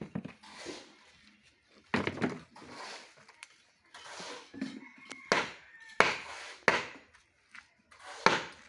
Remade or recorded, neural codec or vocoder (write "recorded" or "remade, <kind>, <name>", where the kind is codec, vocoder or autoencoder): recorded